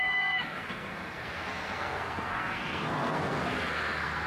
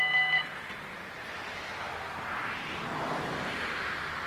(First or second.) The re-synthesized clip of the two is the first